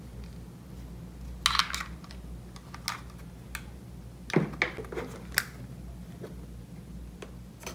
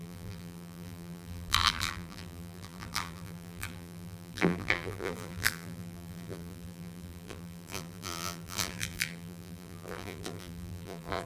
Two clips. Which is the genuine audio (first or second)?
first